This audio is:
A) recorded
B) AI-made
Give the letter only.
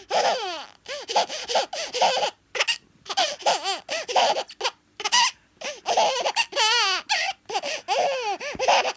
A